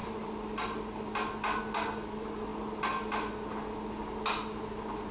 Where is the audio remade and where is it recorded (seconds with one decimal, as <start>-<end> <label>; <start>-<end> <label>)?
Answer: 0.0-5.1 recorded